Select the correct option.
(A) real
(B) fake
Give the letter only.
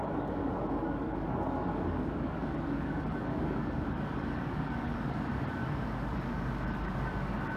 B